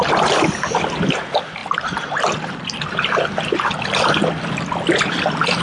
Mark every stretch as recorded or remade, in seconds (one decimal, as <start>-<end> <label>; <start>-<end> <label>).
0.0-1.6 recorded; 1.6-2.5 remade; 2.5-5.6 recorded